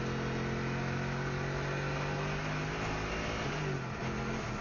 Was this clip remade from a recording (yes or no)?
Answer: no